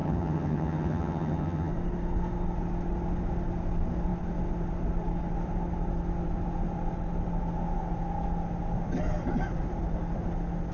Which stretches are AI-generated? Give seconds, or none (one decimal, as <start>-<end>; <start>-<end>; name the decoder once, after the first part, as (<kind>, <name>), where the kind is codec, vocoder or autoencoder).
0.0-1.7 (vocoder, HiFi-GAN)